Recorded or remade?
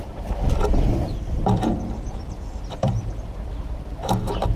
remade